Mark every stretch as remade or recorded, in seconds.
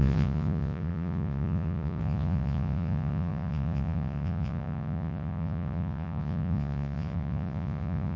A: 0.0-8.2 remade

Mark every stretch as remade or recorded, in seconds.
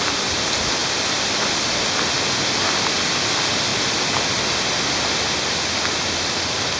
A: 0.0-6.8 recorded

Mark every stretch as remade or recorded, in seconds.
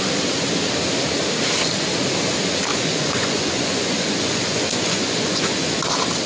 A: 0.0-2.7 recorded; 2.7-5.8 remade; 5.8-6.3 recorded